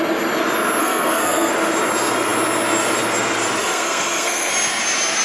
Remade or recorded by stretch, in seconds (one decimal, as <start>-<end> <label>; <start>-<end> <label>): 0.0-0.8 recorded; 0.8-1.5 remade; 1.5-3.6 recorded; 3.6-4.5 remade; 4.5-5.2 recorded